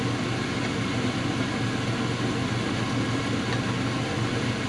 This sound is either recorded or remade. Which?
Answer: recorded